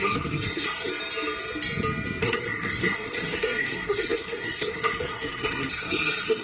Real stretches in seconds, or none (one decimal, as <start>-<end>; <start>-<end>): 0.9-2.2